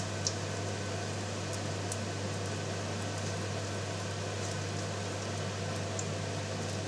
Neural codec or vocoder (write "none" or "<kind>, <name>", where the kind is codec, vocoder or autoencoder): none